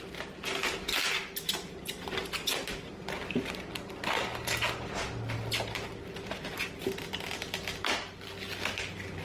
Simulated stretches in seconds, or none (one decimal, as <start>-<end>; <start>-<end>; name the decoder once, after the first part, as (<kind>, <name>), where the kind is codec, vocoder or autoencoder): none